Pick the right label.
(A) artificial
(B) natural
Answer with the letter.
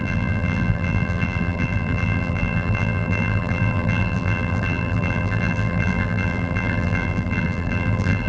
A